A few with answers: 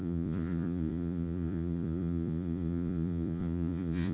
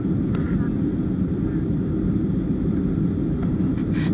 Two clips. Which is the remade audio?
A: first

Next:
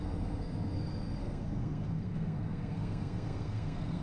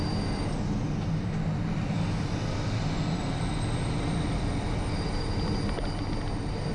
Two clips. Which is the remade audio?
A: first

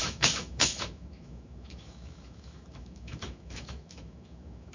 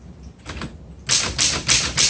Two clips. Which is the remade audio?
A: first